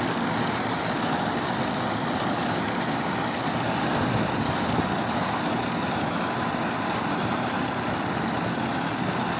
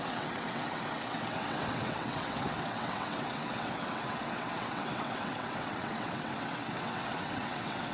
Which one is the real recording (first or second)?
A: first